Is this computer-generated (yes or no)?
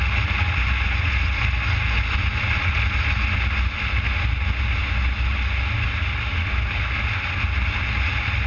no